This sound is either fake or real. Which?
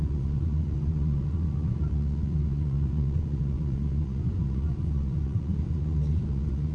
fake